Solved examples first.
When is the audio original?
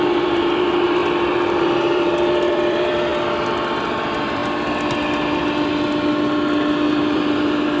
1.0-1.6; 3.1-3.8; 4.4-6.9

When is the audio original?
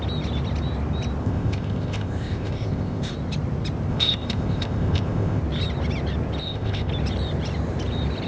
0.0-1.2; 3.1-3.9; 5.4-6.4; 6.9-8.3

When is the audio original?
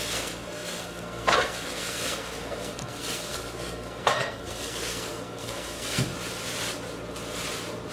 6.1-7.9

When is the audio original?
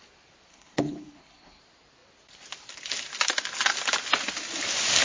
0.0-0.5; 1.6-5.0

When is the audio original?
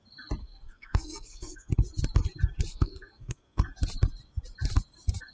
0.0-0.4; 1.7-2.7; 3.6-5.3